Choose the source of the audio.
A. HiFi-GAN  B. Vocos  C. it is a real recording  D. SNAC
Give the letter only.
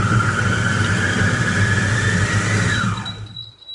C